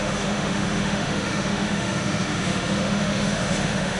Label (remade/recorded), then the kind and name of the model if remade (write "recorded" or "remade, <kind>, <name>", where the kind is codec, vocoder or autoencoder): remade, autoencoder, DAC-VAE